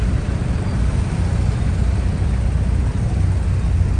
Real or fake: real